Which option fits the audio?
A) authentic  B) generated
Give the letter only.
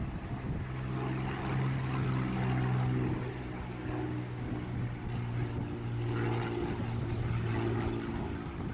A